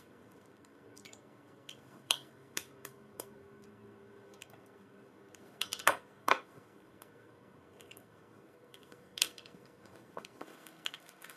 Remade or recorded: remade